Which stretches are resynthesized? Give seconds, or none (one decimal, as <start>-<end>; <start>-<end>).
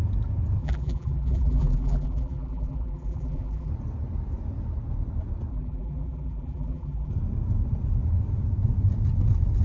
0.6-3.7; 5.5-7.1